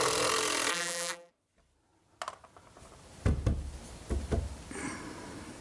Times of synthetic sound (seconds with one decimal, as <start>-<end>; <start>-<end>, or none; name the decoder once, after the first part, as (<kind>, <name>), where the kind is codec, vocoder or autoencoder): 0.7-1.3 (vocoder, BigVGAN v2)